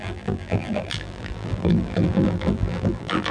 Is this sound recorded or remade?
remade